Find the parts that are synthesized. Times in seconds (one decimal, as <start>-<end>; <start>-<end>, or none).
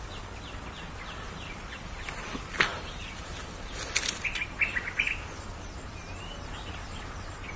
none